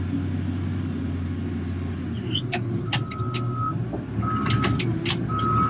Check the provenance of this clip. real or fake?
real